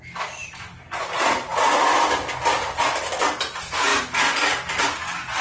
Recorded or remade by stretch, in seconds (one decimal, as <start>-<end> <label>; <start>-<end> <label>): 0.0-0.4 recorded; 0.4-1.0 remade; 1.0-1.5 recorded; 1.5-2.3 remade; 2.3-3.9 recorded; 3.9-4.8 remade; 4.8-5.4 recorded